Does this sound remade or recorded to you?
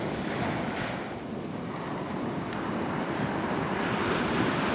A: remade